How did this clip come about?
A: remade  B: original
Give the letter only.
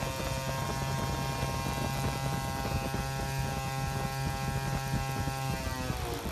B